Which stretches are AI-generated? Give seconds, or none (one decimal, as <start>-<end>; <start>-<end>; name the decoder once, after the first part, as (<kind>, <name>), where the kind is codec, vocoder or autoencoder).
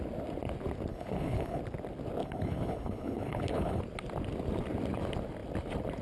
0.9-1.6 (codec, HILCodec); 2.2-3.8